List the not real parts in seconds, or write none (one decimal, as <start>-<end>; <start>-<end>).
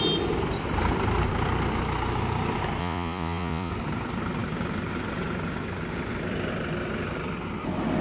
2.8-3.7